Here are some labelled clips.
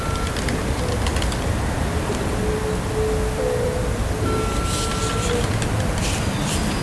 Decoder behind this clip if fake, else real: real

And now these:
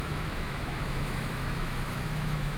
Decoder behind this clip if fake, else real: fake, autoencoder, DAC-VAE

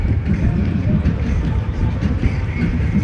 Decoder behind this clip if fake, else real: fake, vocoder, BigVGAN v2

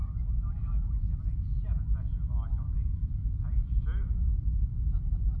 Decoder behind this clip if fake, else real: real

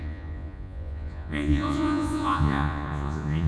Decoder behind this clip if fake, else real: fake, vocoder, Vocos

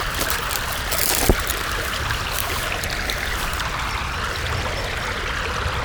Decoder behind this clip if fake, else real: real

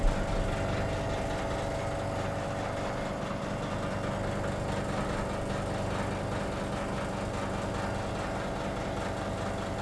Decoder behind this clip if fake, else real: real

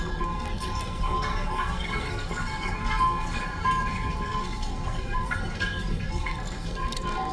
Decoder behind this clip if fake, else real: fake, codec, SNAC